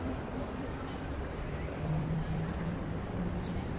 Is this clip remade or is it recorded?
remade